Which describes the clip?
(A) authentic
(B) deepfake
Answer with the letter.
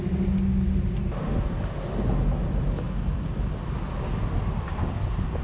A